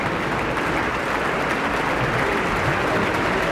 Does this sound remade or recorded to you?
recorded